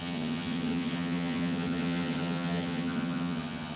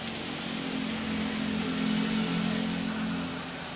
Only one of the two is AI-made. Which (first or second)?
first